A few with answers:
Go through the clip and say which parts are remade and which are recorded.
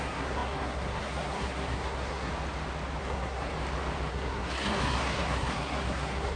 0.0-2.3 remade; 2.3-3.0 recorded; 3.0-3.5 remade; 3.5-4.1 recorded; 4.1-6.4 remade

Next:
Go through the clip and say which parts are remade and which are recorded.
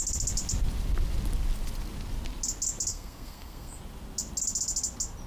0.0-2.9 recorded; 2.9-3.8 remade; 3.8-5.3 recorded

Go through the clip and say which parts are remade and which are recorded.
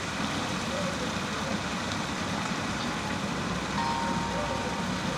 0.0-5.2 recorded